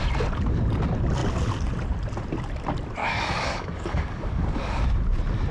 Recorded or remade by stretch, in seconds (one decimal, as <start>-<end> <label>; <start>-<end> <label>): 0.0-3.0 recorded; 3.0-4.8 remade; 4.8-5.5 recorded